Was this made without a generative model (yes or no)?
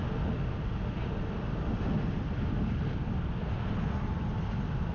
yes